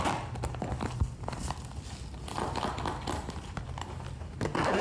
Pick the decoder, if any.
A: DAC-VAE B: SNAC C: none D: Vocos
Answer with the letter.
C